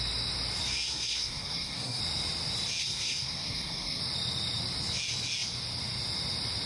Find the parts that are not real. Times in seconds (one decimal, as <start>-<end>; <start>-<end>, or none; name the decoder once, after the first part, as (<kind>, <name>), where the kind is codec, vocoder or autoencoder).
0.7-2.0 (codec, SNAC); 2.8-4.0